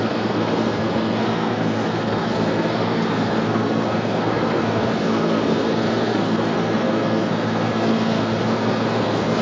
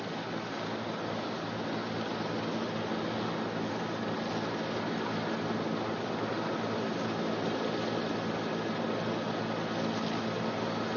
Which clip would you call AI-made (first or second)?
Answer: first